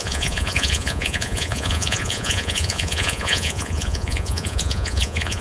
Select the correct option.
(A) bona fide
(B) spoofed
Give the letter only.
B